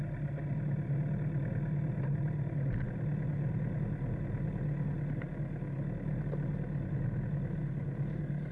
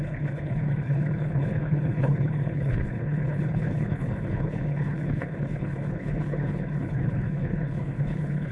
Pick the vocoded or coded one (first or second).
second